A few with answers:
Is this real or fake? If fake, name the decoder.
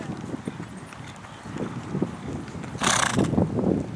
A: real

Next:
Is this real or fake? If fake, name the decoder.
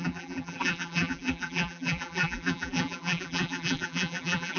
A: fake, vocoder, BigVGAN v2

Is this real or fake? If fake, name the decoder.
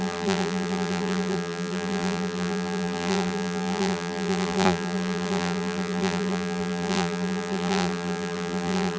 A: fake, vocoder, BigVGAN v2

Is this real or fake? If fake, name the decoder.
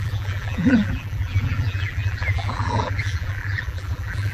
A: fake, vocoder, BigVGAN v2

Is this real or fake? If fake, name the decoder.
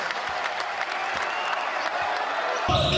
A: real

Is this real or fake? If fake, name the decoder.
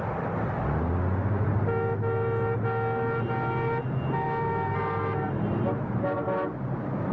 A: real